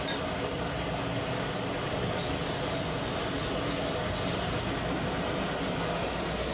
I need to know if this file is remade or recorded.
recorded